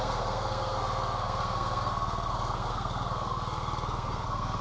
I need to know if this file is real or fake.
fake